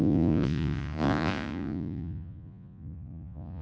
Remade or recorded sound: remade